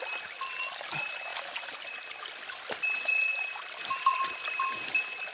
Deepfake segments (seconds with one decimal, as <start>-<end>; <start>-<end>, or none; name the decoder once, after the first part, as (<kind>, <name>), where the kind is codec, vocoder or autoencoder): none